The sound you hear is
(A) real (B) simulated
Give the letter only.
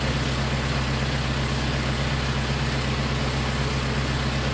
A